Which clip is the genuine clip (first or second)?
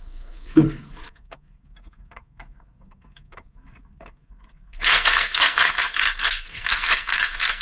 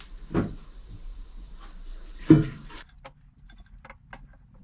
second